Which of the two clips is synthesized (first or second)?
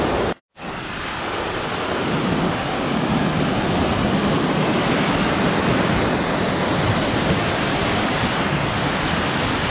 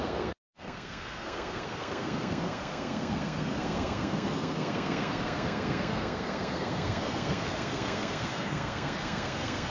second